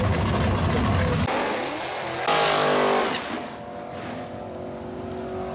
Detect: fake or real real